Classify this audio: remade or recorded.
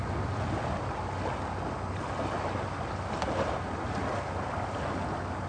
recorded